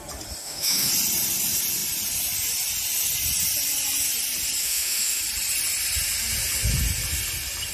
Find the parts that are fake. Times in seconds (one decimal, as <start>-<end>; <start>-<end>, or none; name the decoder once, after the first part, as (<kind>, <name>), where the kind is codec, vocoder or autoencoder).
0.4-0.9 (autoencoder, DAC-VAE); 4.6-5.2